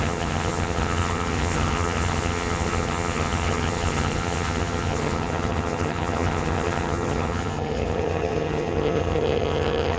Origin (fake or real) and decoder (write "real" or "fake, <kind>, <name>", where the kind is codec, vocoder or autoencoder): fake, vocoder, HiFi-GAN